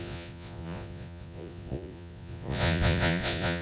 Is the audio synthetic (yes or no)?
yes